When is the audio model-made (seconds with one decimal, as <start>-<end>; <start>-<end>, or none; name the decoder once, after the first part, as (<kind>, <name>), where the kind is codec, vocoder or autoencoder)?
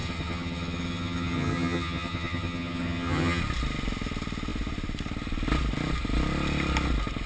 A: 0.0-3.4 (vocoder, HiFi-GAN)